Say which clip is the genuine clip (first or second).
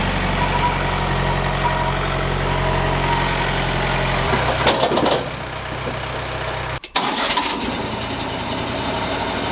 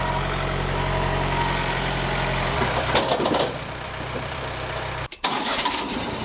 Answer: first